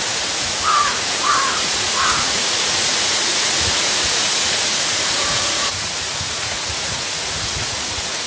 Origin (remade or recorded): remade